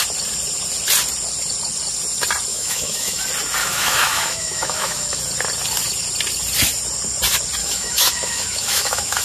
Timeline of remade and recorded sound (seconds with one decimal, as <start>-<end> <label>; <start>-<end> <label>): 0.0-2.5 recorded; 2.5-3.2 remade; 3.2-3.6 recorded; 3.6-5.2 remade; 5.2-7.6 recorded; 7.6-9.2 remade